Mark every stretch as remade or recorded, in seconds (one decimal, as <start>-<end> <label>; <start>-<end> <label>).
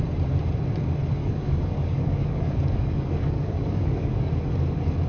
0.0-1.2 recorded; 1.2-4.3 remade; 4.3-5.1 recorded